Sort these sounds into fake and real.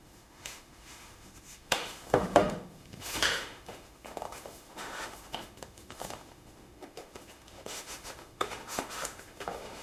fake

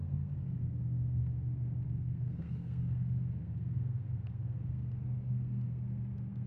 fake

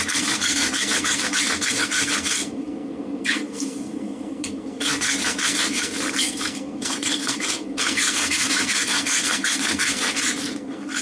fake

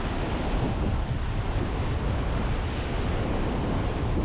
real